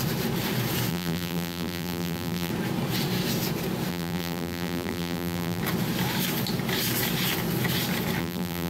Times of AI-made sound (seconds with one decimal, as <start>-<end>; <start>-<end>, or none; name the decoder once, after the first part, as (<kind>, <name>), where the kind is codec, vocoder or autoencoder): 0.9-2.5 (vocoder, BigVGAN v2); 3.9-5.6; 8.2-8.7